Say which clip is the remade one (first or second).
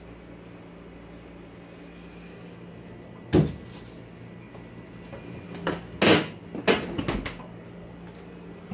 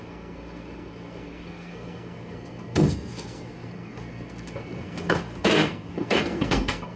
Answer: second